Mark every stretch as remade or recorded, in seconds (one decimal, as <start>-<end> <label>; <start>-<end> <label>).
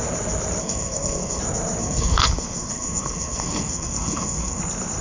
0.0-0.6 recorded; 0.6-1.4 remade; 1.4-1.8 recorded; 1.8-4.6 remade; 4.6-5.0 recorded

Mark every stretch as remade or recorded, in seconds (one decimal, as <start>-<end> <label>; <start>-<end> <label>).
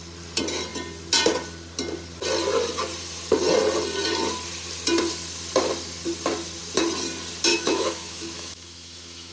0.0-7.5 recorded; 7.5-9.3 remade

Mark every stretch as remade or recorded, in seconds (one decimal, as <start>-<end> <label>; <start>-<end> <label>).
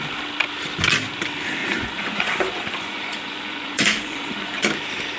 0.0-1.6 recorded; 1.6-4.7 remade; 4.7-5.2 recorded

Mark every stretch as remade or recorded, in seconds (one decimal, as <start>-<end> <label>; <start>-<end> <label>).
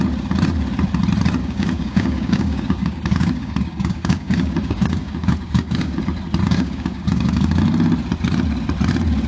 0.0-1.4 recorded; 1.4-6.0 remade; 6.0-6.4 recorded; 6.4-7.6 remade; 7.6-9.3 recorded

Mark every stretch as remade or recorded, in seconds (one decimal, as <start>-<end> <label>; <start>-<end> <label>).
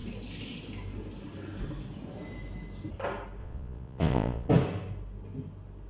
0.0-3.4 recorded; 3.4-4.5 remade; 4.5-5.9 recorded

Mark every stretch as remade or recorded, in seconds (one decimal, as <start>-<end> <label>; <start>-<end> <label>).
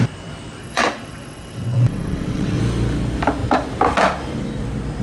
0.0-0.6 recorded; 0.6-2.6 remade; 2.6-5.0 recorded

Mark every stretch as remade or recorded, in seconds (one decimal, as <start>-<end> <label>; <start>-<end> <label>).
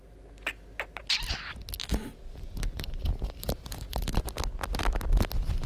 0.0-1.8 recorded; 1.8-4.2 remade; 4.2-5.7 recorded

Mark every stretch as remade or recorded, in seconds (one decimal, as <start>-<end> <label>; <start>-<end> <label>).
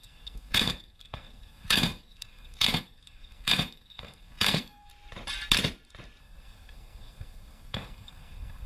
0.0-4.9 remade; 4.9-6.2 recorded; 6.2-8.7 remade